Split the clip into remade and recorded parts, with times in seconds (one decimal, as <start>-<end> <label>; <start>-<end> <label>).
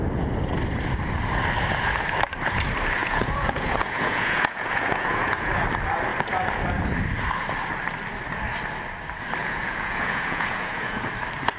0.0-3.0 recorded; 3.0-5.5 remade; 5.5-9.4 recorded; 9.4-11.1 remade; 11.1-11.6 recorded